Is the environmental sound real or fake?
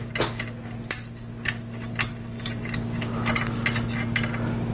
real